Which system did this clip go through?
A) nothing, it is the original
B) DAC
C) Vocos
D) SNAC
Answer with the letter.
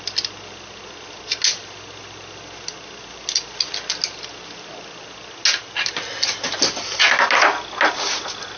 A